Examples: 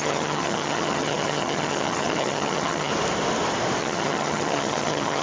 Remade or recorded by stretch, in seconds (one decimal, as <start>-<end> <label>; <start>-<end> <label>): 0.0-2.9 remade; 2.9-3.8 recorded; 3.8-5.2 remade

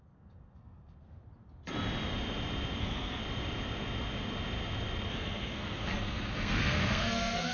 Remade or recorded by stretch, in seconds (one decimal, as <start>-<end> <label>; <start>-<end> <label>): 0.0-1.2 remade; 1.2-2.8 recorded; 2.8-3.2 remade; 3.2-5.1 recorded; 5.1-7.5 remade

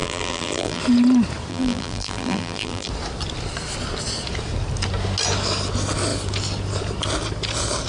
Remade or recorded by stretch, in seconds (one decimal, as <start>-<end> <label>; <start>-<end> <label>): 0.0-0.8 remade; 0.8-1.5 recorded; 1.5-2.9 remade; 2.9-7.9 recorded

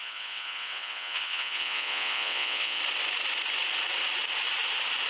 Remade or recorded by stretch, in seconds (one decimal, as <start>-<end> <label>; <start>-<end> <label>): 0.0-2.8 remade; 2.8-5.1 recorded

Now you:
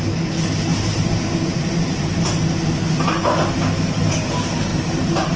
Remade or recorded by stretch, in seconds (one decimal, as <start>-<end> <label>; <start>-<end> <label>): 0.0-0.7 recorded; 0.7-2.6 remade; 2.6-4.7 recorded; 4.7-5.4 remade

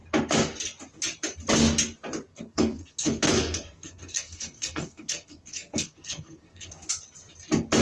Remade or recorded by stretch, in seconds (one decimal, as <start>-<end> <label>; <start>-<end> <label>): 0.0-2.3 recorded; 2.3-6.7 remade; 6.7-7.8 recorded

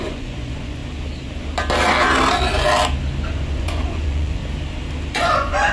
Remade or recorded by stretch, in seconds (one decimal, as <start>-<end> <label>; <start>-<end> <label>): 0.0-0.8 remade; 0.8-3.3 recorded; 3.3-4.4 remade; 4.4-5.1 recorded; 5.1-5.7 remade

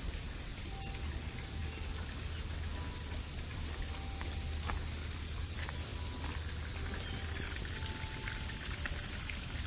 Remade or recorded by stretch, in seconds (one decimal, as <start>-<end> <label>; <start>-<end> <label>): 0.0-9.7 recorded